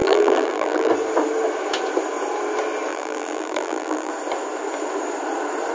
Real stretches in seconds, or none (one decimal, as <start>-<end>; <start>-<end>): 0.9-2.9; 4.1-5.7